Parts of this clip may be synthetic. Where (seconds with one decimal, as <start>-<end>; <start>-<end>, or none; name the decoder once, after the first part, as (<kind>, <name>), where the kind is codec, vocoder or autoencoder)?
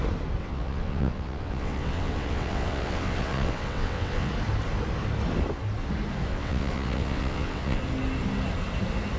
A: 0.4-4.3 (vocoder, WaveNeXt); 6.3-7.8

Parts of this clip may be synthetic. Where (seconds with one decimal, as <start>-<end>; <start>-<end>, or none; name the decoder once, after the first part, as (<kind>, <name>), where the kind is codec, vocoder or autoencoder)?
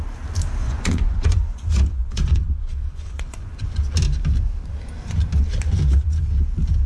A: 0.6-3.8 (vocoder, Vocos)